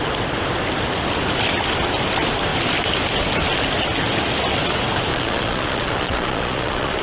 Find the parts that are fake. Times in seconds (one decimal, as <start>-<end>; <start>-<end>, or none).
5.1-7.0